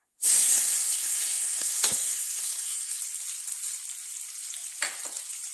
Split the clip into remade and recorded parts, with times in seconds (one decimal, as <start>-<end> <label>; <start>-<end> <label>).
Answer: 0.0-3.0 remade; 3.0-5.5 recorded